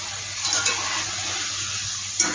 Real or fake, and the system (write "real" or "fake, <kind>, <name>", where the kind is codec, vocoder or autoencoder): real